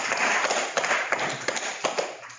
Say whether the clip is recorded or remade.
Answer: remade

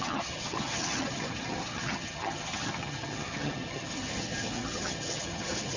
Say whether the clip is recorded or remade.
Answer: remade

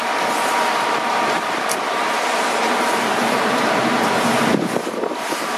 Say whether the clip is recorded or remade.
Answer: remade